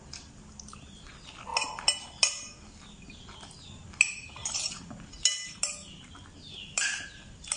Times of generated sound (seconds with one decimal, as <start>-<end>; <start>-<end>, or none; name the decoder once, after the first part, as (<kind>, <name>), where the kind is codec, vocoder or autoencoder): none